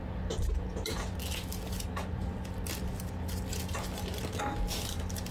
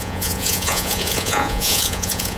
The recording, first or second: first